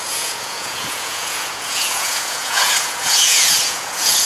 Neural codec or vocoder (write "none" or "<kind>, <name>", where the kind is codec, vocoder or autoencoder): vocoder, Vocos